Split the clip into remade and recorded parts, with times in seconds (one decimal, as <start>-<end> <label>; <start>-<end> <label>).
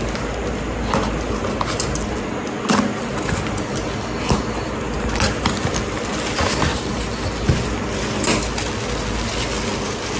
0.0-6.7 recorded; 6.7-7.2 remade; 7.2-10.2 recorded